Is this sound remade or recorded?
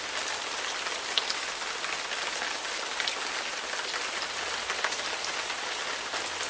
recorded